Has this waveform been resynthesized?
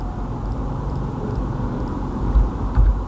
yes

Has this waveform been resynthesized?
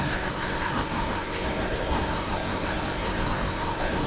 yes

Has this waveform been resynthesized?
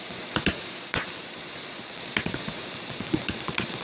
yes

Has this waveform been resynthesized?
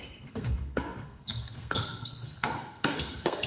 yes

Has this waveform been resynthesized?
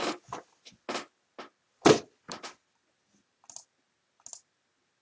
no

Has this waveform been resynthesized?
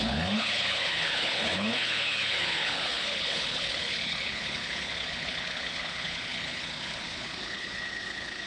yes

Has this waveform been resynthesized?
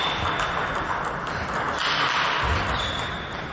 no